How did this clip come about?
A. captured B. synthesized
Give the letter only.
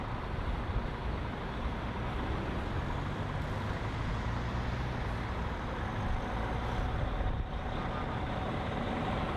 A